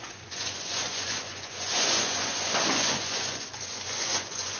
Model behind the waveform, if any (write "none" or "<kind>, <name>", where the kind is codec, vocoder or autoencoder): vocoder, Vocos